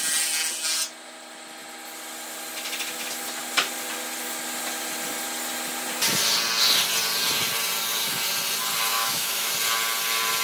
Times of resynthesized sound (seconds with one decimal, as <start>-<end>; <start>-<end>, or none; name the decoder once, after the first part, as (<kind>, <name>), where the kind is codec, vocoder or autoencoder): 8.9-9.5 (autoencoder, DAC-VAE)